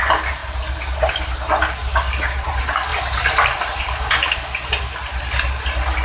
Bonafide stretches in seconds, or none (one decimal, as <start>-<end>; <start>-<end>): 0.0-1.8; 2.5-6.0